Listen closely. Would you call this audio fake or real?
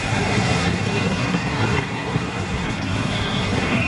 fake